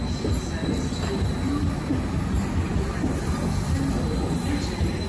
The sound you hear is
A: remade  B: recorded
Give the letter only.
B